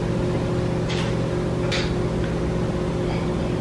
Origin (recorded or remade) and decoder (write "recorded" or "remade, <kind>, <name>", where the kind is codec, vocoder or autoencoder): recorded